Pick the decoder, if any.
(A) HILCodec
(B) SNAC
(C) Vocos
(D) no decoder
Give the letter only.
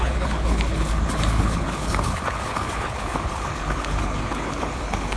A